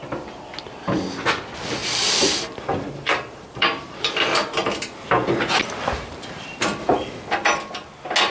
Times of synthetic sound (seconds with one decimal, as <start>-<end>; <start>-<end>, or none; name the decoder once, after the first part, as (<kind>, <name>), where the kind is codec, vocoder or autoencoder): 1.8-6.8 (vocoder, BigVGAN v2)